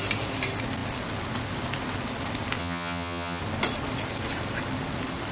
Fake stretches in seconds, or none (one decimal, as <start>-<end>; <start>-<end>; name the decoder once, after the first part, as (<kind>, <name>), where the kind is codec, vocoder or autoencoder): 2.6-3.4 (vocoder, HiFi-GAN)